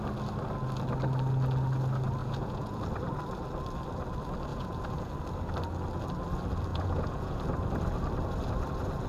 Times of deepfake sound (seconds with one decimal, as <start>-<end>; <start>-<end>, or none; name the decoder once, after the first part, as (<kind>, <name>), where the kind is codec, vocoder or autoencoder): 2.2-2.8 (vocoder, Vocos); 4.5-5.1; 6.7-7.4